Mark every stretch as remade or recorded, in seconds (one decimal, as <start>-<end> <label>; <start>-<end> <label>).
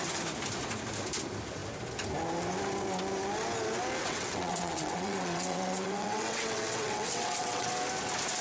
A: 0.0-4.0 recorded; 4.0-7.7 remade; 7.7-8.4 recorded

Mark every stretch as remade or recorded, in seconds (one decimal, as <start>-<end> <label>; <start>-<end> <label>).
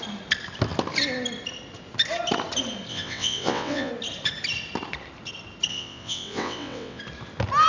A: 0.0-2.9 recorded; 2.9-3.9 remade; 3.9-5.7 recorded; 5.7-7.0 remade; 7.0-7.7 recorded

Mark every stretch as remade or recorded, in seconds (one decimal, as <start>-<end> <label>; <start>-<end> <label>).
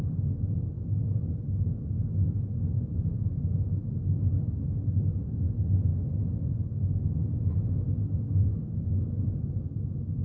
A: 0.0-10.2 recorded